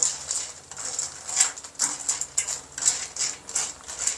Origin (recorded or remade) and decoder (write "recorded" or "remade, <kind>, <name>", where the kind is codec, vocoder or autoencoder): recorded